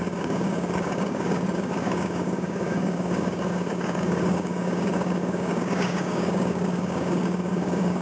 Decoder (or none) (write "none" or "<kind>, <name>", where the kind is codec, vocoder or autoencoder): codec, DAC